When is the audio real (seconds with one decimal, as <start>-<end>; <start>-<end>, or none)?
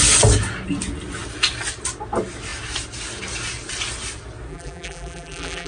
0.0-4.5